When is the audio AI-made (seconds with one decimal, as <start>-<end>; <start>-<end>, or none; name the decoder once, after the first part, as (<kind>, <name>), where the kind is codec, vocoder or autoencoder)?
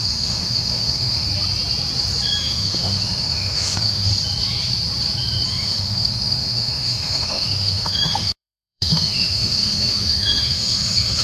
0.0-1.3 (autoencoder, DAC-VAE); 2.4-4.1; 5.5-11.2